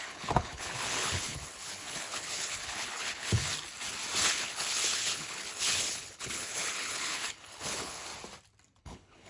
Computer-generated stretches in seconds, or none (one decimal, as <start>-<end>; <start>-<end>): 0.0-3.5; 4.2-8.1; 8.8-9.3